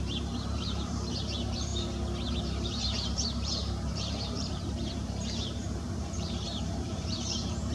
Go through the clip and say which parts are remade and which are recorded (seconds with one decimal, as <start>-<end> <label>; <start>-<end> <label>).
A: 0.0-1.7 remade; 1.7-2.4 recorded; 2.4-7.7 remade